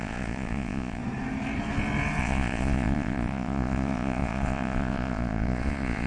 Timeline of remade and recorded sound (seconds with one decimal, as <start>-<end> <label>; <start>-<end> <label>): 0.0-1.0 remade; 1.0-2.2 recorded; 2.2-6.1 remade